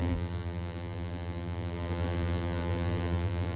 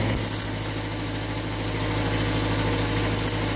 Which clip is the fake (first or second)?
first